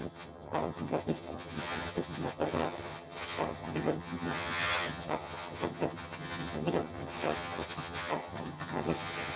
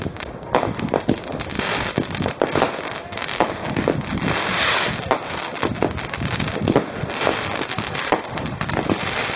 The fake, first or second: first